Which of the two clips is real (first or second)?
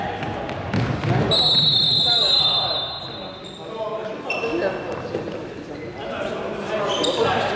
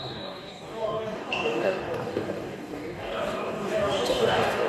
first